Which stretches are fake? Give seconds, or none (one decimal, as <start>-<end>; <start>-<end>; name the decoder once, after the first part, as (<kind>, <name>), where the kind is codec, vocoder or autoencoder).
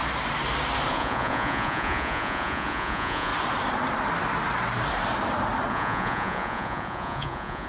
0.9-3.3 (vocoder, Vocos); 5.7-7.7